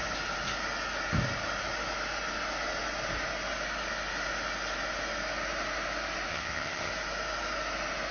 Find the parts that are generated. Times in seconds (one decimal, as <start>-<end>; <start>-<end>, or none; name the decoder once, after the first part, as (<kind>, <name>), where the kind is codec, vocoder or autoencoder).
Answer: 6.3-6.9 (vocoder, HiFi-GAN)